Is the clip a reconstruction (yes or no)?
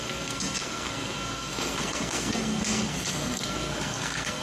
yes